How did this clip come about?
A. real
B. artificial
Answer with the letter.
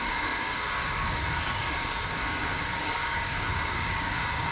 B